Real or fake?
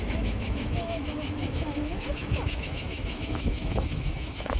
fake